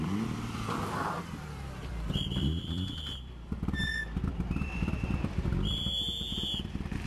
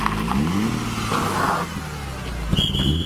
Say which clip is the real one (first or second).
second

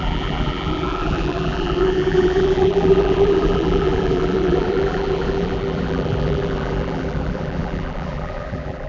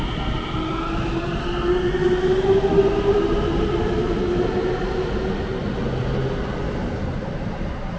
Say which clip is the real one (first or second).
second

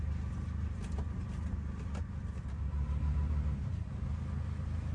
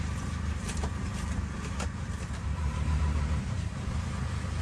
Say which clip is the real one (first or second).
first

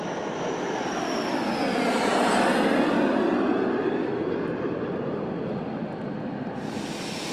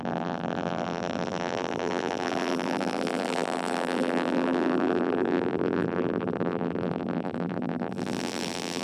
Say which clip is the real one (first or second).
first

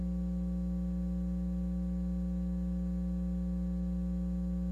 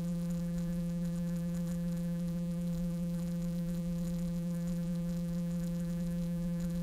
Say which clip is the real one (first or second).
first